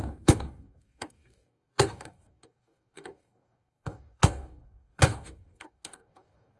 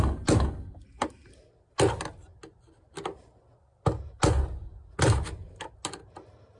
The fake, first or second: first